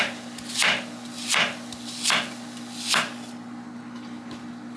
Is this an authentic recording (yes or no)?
yes